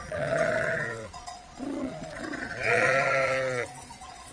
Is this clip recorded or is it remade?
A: remade